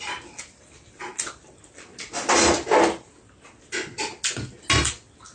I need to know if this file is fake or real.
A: real